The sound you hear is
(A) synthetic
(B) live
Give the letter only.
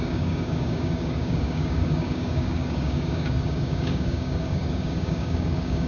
A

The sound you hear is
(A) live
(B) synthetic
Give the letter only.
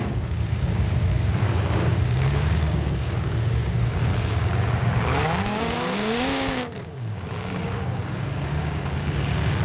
B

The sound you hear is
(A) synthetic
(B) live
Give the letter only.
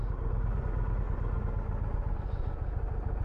B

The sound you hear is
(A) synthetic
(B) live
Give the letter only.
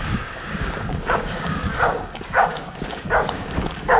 A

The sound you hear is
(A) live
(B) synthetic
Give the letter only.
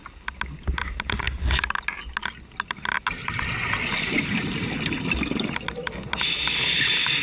A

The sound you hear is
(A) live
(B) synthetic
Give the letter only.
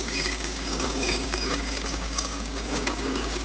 B